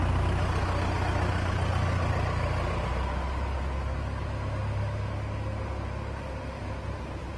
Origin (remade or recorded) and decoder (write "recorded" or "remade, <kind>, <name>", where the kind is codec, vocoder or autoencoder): recorded